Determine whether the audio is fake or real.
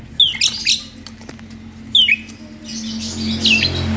real